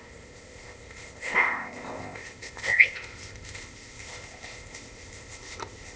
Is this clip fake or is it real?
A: fake